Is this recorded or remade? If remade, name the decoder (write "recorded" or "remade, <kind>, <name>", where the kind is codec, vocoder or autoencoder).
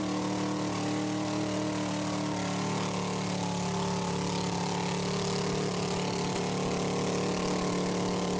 recorded